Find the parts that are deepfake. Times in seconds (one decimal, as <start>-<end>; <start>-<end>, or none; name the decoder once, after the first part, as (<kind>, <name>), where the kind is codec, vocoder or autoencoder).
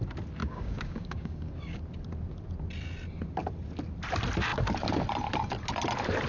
0.4-1.8 (codec, DAC)